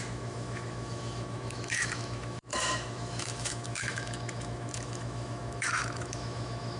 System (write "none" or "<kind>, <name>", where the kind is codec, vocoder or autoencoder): autoencoder, DAC-VAE